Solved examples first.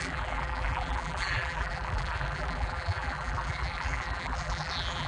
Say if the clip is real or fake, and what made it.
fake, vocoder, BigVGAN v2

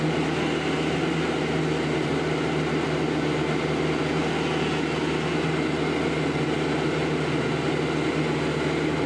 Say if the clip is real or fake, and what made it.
real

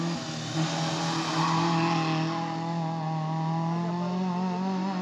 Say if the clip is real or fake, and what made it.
real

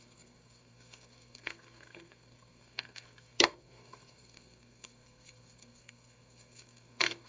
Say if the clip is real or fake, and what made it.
fake, codec, SNAC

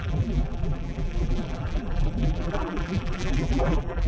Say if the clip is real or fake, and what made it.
fake, vocoder, BigVGAN v2